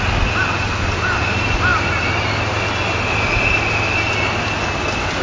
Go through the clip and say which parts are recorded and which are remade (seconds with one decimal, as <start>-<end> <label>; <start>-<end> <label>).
0.0-5.2 recorded